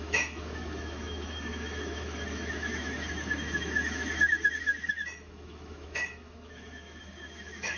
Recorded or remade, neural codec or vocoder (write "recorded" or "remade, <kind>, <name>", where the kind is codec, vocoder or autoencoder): remade, autoencoder, DAC-VAE